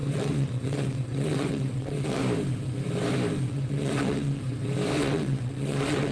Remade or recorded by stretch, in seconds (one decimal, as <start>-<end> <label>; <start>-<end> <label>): 0.0-2.2 remade; 2.2-3.5 recorded; 3.5-4.4 remade; 4.4-5.0 recorded; 5.0-6.1 remade